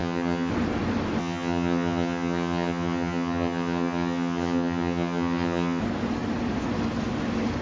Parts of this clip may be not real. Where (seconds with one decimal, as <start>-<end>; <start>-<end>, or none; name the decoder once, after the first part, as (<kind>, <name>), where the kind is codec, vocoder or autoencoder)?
0.0-0.5 (vocoder, HiFi-GAN); 1.2-5.8

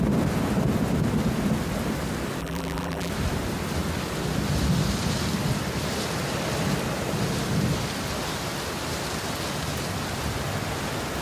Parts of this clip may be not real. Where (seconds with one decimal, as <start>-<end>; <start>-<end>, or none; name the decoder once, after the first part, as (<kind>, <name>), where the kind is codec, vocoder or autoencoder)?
2.4-3.1 (vocoder, BigVGAN v2)

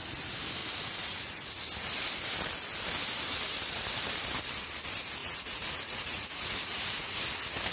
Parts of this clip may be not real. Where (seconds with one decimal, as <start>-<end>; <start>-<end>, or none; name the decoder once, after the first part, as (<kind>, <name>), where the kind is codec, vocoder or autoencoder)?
0.6-1.5 (vocoder, Vocos); 5.2-7.2

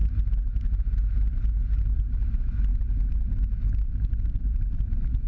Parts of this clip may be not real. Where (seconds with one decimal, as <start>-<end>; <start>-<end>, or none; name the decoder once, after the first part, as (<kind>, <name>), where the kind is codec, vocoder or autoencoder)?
none